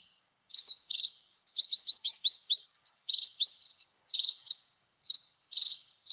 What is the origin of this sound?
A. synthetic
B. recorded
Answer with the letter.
A